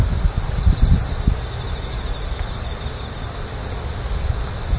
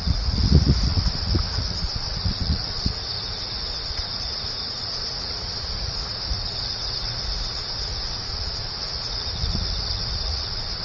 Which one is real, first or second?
first